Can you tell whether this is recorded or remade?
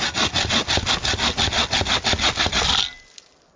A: recorded